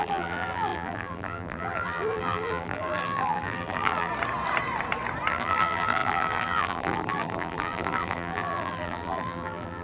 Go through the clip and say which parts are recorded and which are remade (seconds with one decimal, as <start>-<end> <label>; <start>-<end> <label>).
0.0-4.1 remade; 4.1-5.3 recorded; 5.3-9.8 remade